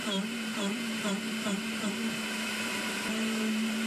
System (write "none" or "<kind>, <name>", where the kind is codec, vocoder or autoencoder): vocoder, BigVGAN v2